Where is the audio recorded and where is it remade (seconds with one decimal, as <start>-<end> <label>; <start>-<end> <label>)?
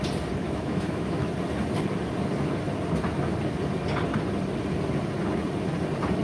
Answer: 0.0-0.4 recorded; 0.4-1.3 remade; 1.3-6.2 recorded